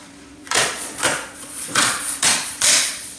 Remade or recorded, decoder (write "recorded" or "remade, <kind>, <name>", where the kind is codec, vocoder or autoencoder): remade, vocoder, Vocos